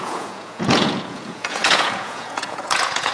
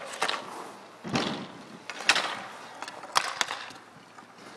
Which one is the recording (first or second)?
second